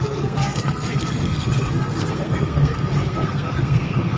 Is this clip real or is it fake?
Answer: fake